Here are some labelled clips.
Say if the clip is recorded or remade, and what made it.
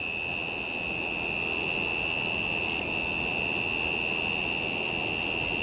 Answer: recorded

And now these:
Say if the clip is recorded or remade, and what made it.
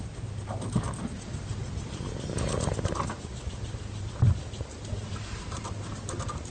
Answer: recorded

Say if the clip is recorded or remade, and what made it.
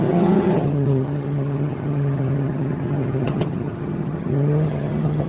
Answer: remade, vocoder, HiFi-GAN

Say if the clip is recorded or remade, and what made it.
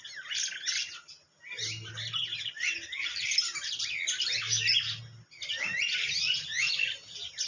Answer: recorded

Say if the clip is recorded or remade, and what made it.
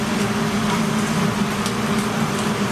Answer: recorded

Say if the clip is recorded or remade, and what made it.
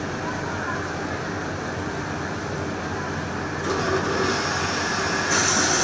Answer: recorded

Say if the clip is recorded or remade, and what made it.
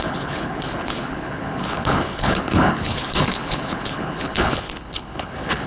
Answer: remade, codec, HILCodec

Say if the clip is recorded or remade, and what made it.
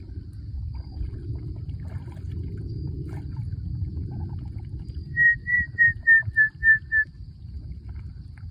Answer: remade, vocoder, BigVGAN v2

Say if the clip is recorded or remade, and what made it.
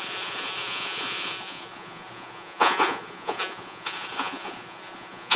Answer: remade, vocoder, Vocos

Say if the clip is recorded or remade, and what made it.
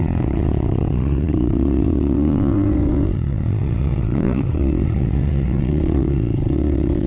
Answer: remade, vocoder, WaveNeXt